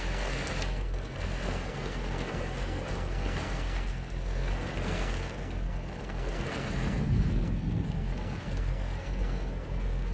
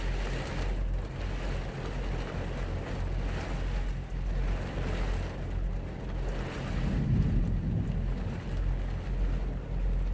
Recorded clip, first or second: second